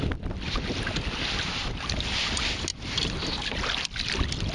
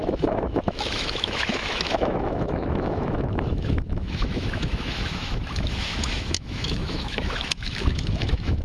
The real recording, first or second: first